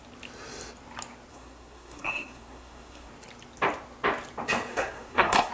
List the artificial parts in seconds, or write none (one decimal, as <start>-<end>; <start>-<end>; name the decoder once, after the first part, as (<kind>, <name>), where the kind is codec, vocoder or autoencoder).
1.3-3.1 (codec, SNAC); 4.7-5.5